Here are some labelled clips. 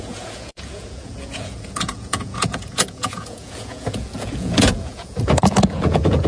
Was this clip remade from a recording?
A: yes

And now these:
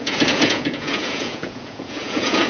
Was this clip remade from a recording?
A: yes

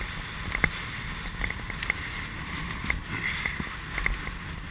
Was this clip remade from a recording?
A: no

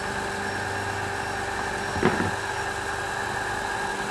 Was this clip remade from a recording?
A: no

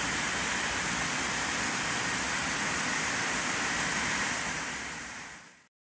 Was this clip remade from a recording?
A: no